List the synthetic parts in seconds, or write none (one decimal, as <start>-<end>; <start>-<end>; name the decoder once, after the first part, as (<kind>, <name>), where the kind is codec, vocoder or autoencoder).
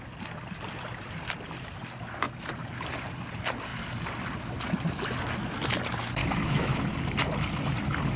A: 6.2-6.7 (autoencoder, DAC-VAE)